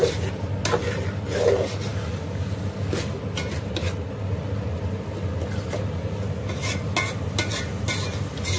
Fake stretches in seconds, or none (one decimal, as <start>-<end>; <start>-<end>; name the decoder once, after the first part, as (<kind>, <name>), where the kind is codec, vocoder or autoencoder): none